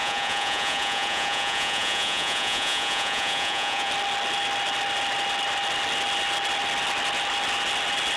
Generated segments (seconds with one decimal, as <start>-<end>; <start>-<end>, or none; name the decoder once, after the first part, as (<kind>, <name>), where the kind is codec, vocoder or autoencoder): 0.0-3.9 (vocoder, Vocos)